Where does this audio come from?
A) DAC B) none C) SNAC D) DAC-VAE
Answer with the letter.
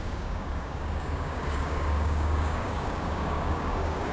A